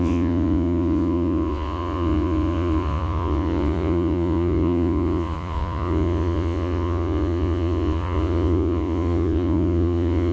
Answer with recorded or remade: remade